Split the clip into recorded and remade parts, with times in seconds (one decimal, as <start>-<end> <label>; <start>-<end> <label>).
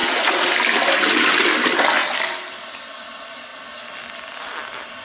0.0-0.5 remade; 0.5-5.0 recorded